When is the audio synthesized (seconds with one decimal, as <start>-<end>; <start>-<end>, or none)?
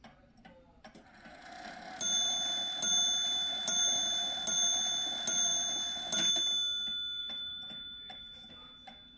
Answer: 7.2-8.5